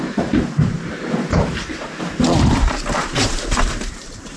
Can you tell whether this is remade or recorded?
remade